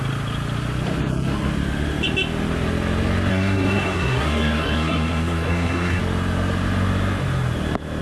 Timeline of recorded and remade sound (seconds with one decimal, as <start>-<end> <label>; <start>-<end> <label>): 0.0-3.3 recorded; 3.3-6.0 remade; 6.0-8.0 recorded